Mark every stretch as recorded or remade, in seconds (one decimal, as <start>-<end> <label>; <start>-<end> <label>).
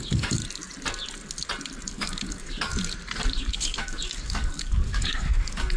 0.0-0.4 remade; 0.4-1.9 recorded; 1.9-2.7 remade; 2.7-3.3 recorded; 3.3-5.8 remade